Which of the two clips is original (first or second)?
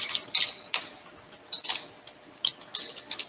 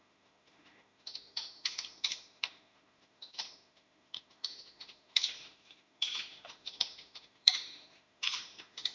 first